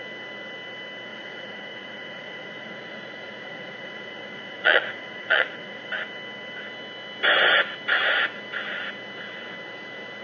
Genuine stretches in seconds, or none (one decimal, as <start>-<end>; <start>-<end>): 0.0-1.1; 5.9-10.2